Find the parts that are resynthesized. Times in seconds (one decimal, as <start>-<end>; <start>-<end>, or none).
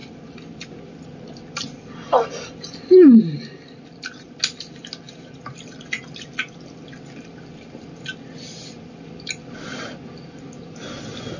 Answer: none